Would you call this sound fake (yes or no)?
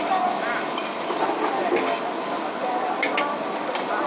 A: no